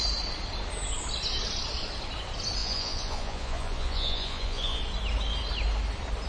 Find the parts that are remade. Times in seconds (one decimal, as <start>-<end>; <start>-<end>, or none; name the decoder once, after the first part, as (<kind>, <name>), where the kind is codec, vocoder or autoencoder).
2.6-4.8 (vocoder, Vocos)

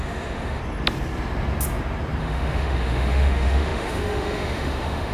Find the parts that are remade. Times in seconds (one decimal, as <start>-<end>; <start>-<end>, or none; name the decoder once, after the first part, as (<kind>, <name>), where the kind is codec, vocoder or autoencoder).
0.0-0.6 (autoencoder, DAC-VAE); 2.2-5.1